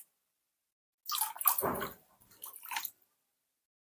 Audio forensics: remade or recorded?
recorded